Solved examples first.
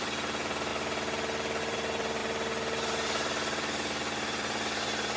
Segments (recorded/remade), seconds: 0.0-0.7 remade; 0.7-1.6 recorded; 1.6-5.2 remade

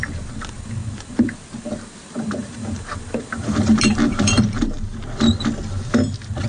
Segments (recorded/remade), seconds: 0.0-2.4 recorded; 2.4-5.2 remade; 5.2-6.5 recorded

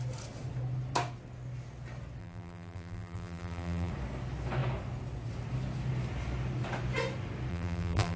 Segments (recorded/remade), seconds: 0.0-2.2 recorded; 2.2-3.9 remade; 3.9-7.5 recorded; 7.5-8.2 remade

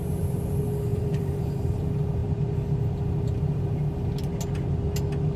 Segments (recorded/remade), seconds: 0.0-0.9 recorded; 0.9-1.8 remade; 1.8-5.4 recorded

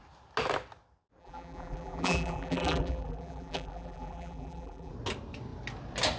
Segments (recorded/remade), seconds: 0.0-1.2 recorded; 1.2-4.9 remade; 4.9-6.2 recorded

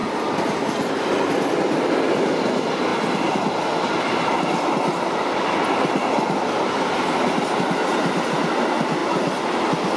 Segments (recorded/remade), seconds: 0.0-10.0 recorded

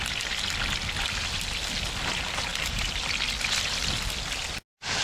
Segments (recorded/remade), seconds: 0.0-2.5 recorded; 2.5-3.0 remade; 3.0-5.0 recorded

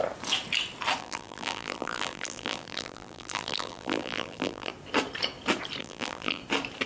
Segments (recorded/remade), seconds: 0.0-1.0 recorded; 1.0-4.7 remade; 4.7-5.8 recorded; 5.8-6.4 remade; 6.4-6.9 recorded